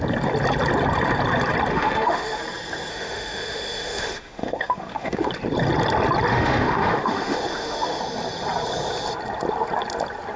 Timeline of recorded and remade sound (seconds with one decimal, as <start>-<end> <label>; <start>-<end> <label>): 0.0-1.7 recorded; 1.7-2.4 remade; 2.4-2.9 recorded; 2.9-5.3 remade; 5.3-6.3 recorded; 6.3-8.0 remade; 8.0-10.4 recorded